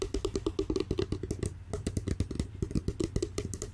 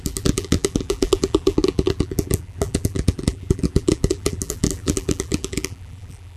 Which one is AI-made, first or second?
second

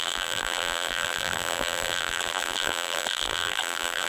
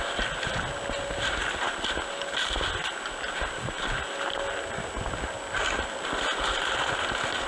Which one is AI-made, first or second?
first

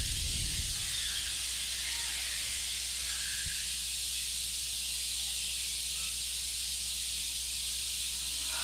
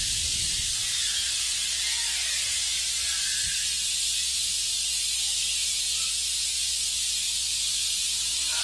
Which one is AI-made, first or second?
second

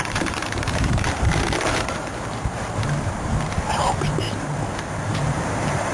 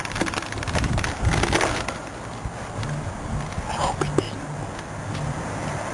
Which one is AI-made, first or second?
first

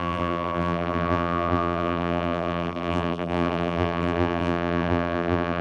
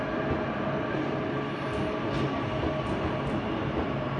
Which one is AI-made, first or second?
first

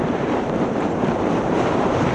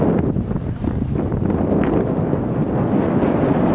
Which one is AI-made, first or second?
first